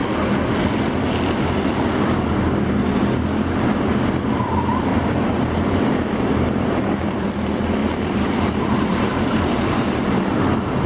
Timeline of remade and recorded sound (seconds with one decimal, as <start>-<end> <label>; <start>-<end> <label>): 0.0-4.9 recorded; 4.9-7.3 remade; 7.3-7.8 recorded; 7.8-10.0 remade; 10.0-10.9 recorded